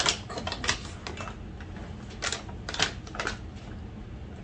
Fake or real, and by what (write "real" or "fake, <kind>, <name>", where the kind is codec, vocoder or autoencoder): real